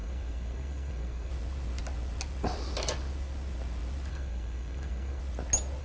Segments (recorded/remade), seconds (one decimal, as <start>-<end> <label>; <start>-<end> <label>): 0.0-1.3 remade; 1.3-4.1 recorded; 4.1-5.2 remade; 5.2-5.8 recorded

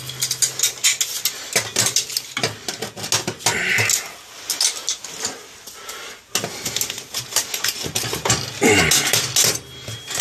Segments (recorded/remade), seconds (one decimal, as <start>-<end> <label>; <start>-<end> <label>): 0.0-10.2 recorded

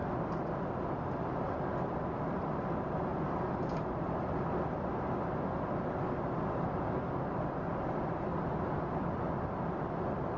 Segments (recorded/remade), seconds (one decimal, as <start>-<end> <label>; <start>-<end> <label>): 0.0-10.4 recorded

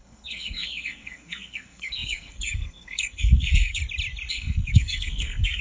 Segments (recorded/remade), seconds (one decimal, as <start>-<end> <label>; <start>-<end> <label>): 0.0-3.8 remade; 3.8-4.3 recorded; 4.3-5.6 remade

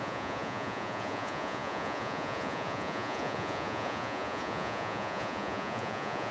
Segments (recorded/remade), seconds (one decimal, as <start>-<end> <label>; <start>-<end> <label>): 0.0-6.3 remade